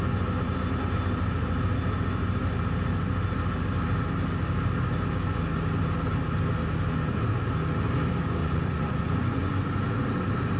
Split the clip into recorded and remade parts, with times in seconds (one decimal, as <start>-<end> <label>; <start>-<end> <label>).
0.0-8.4 recorded; 8.4-9.5 remade; 9.5-10.6 recorded